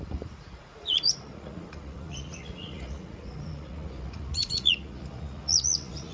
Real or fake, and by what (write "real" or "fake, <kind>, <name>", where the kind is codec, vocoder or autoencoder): fake, vocoder, Vocos